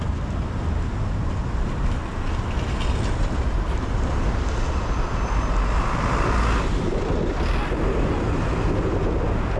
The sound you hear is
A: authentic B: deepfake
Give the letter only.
A